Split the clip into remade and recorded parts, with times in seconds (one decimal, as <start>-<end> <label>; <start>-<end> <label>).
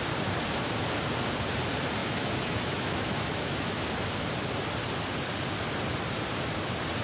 0.0-2.0 recorded; 2.0-3.9 remade; 3.9-7.0 recorded